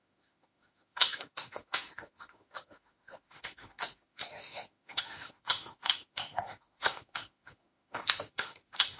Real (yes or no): no